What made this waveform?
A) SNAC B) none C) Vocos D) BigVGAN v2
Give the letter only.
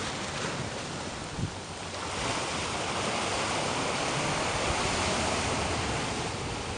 B